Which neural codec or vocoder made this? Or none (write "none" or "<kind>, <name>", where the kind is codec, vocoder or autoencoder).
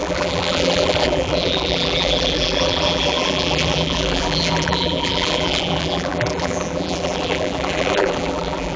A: vocoder, BigVGAN v2